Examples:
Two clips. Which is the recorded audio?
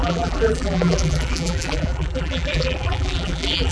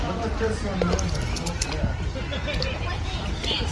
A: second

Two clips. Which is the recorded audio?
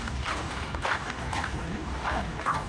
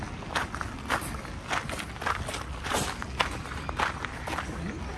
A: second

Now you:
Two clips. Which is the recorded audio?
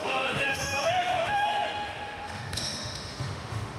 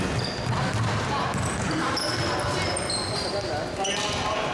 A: second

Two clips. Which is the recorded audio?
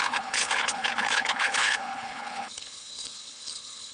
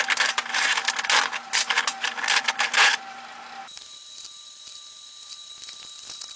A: second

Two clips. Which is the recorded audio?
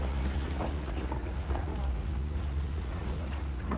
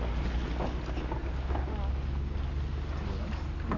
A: second